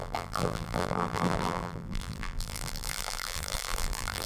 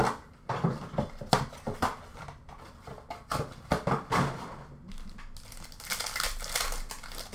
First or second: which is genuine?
second